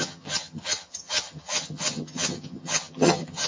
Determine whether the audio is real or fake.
fake